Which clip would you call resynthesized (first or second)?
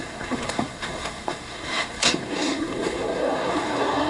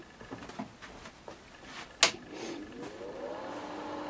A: first